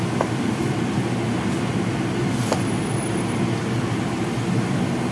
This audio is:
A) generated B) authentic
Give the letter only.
B